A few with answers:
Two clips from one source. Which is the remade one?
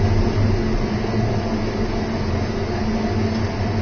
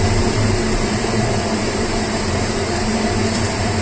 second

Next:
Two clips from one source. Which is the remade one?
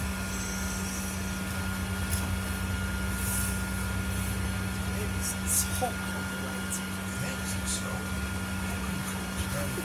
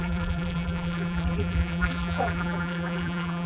second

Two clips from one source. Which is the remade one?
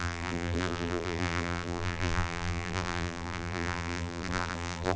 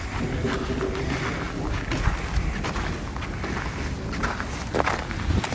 first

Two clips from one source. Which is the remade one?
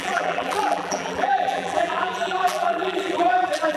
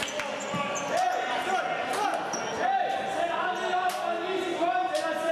first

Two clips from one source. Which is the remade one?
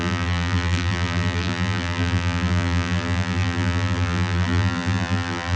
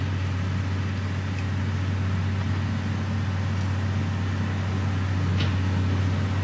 first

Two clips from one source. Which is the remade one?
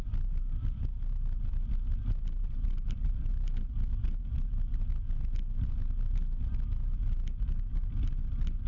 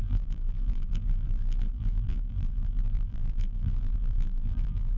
second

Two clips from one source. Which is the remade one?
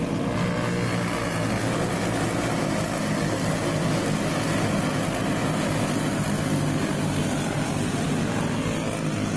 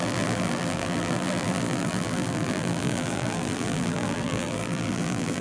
second